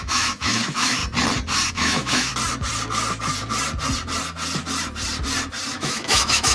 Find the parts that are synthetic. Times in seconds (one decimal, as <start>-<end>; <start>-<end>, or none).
0.0-1.0; 1.7-2.3; 5.7-6.5